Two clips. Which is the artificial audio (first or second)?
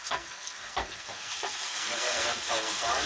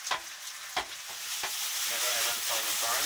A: first